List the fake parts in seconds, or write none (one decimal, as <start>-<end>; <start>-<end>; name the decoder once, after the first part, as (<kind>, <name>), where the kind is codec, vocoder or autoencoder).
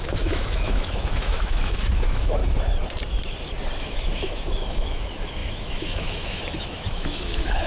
0.0-2.4 (autoencoder, DAC-VAE); 3.8-7.7